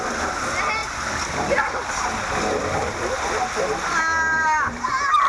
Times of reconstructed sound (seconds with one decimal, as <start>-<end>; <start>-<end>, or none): none